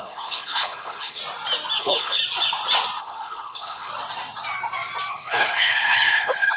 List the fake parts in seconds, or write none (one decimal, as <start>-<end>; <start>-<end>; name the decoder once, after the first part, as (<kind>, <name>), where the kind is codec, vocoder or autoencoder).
0.0-1.2 (codec, HILCodec); 1.8-2.2; 3.0-3.9; 5.1-6.6